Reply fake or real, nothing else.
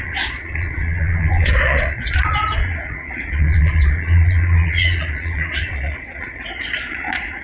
fake